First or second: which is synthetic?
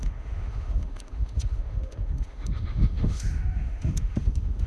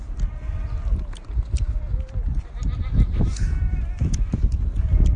first